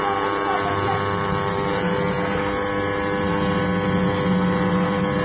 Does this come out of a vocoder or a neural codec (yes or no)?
no